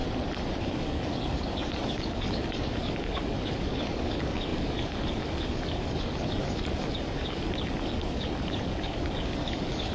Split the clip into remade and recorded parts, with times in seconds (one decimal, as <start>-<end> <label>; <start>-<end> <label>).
0.0-0.6 recorded; 0.6-9.9 remade

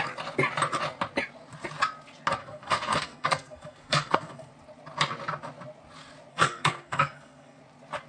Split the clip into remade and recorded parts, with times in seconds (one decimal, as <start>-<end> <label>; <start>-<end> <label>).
0.0-2.4 recorded; 2.4-4.5 remade; 4.5-6.3 recorded; 6.3-7.6 remade; 7.6-8.1 recorded

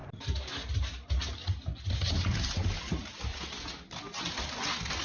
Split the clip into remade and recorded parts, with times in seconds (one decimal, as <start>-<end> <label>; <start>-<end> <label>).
0.0-5.0 recorded

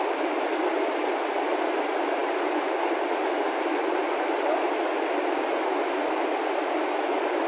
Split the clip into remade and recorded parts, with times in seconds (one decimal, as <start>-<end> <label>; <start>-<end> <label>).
0.0-7.5 recorded